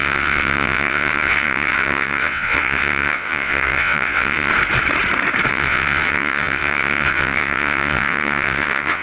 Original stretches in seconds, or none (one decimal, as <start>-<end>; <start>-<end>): 4.5-5.5